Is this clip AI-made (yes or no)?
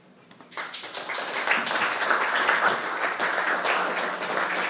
no